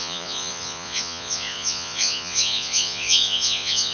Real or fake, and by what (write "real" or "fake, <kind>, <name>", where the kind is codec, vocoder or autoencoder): fake, vocoder, Vocos